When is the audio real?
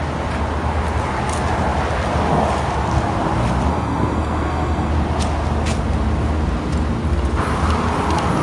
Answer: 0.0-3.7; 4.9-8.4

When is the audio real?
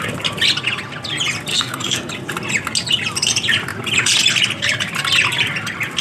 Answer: 0.0-1.5; 2.1-6.0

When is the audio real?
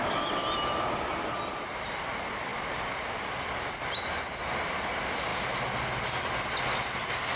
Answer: 0.0-7.4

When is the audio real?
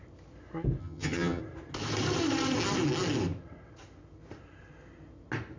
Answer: 0.0-0.8; 1.4-5.6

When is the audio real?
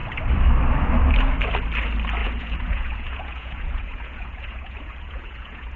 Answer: 0.0-2.2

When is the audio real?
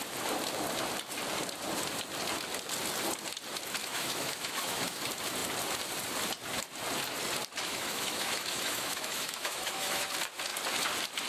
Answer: 0.0-3.8; 5.0-7.7; 10.1-11.3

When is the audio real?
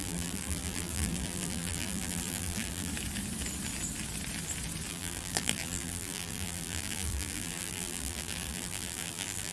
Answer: 2.9-4.9